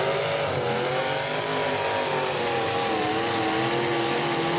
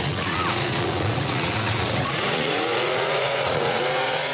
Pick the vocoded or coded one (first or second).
second